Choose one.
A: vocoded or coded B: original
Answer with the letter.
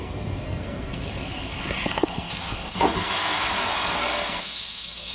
A